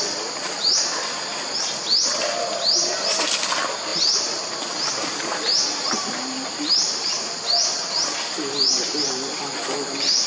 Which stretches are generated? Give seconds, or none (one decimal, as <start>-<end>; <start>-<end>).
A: none